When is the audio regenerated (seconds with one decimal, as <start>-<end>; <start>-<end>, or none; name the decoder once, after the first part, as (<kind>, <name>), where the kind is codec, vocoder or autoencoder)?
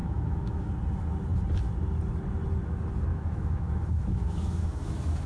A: 0.0-0.7 (autoencoder, DAC-VAE); 3.1-5.3